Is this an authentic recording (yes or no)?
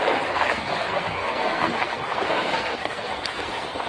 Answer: no